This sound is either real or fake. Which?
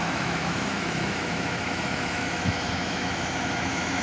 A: fake